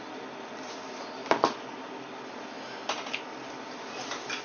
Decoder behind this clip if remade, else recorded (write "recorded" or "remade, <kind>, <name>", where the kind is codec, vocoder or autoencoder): recorded